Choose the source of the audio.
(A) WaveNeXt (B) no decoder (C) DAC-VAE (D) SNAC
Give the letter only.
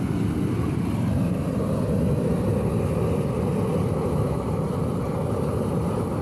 B